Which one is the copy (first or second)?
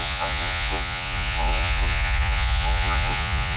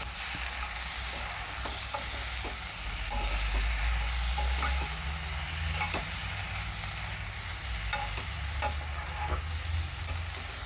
first